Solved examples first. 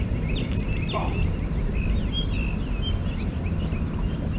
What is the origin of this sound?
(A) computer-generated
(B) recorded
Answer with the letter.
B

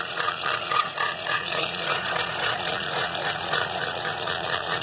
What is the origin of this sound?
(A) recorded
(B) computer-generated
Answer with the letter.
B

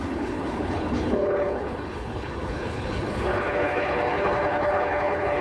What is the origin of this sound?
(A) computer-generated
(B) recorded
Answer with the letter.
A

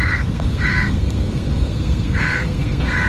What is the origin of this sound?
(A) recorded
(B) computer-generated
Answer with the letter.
B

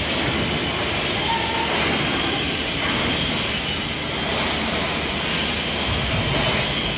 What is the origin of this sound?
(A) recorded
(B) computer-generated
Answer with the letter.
A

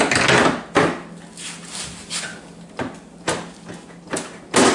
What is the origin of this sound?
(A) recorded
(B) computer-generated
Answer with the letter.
A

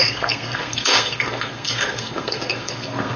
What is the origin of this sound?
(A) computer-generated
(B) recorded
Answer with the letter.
A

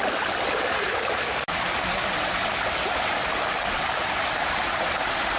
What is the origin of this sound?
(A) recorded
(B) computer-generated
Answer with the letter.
A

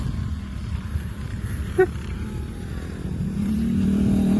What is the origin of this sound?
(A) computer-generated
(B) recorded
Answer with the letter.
A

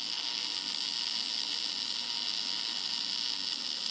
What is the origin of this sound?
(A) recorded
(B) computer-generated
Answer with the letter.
A